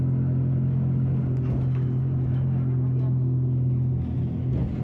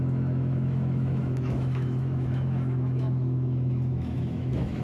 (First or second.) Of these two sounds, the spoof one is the second